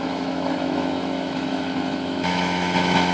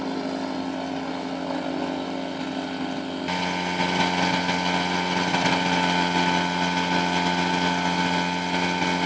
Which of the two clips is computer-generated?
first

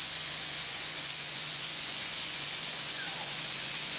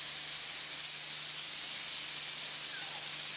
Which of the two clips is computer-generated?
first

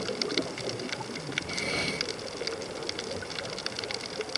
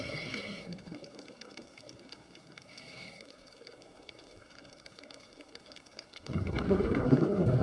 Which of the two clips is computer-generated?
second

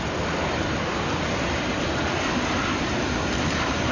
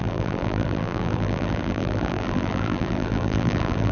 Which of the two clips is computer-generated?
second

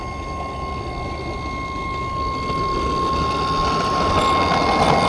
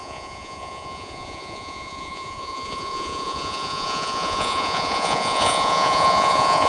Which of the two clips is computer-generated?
second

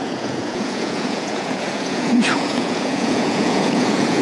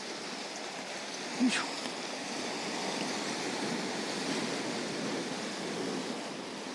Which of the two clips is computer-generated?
first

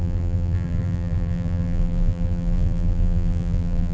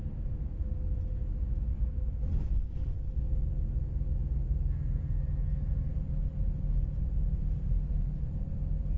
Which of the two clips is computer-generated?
first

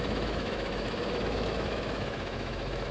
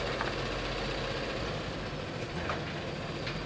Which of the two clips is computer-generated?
first